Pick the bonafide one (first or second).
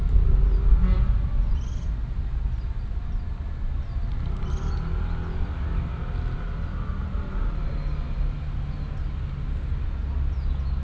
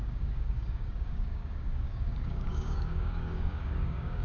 first